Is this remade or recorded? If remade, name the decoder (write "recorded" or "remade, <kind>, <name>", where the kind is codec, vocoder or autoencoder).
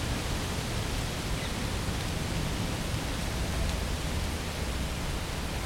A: recorded